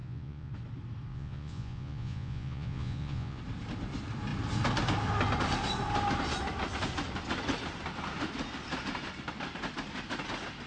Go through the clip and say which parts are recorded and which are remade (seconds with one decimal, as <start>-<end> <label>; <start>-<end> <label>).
0.0-0.5 remade; 0.5-1.1 recorded; 1.1-3.4 remade; 3.4-10.7 recorded